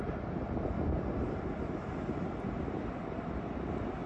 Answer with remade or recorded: recorded